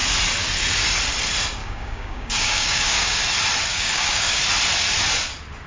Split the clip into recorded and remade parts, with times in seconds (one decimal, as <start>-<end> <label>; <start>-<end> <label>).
0.0-1.6 recorded; 1.6-3.2 remade; 3.2-3.7 recorded; 3.7-4.4 remade; 4.4-5.7 recorded